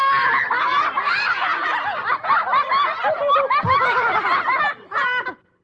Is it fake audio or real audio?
real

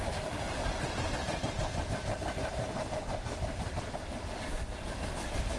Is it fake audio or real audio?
real